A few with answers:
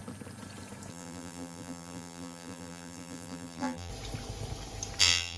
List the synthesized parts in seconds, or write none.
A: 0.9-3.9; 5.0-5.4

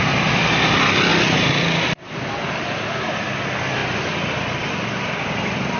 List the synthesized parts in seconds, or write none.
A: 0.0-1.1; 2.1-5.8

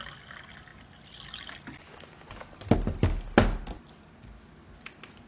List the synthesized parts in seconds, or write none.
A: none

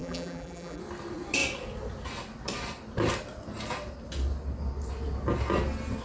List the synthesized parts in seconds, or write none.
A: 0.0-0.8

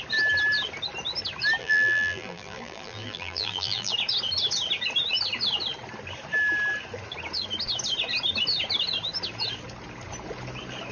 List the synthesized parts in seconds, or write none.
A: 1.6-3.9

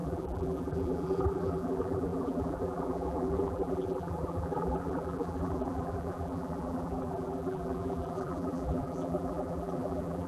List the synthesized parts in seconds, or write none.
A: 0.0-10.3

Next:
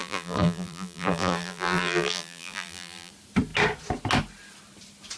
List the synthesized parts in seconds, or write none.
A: 0.0-3.1